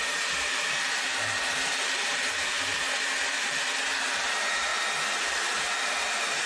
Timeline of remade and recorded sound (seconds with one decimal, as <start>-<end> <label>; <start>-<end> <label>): 0.0-4.7 remade; 4.7-5.2 recorded; 5.2-6.5 remade